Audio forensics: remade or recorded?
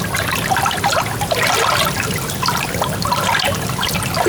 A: recorded